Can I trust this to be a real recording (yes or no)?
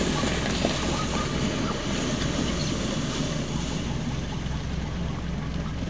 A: yes